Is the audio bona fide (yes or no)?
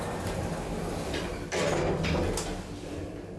yes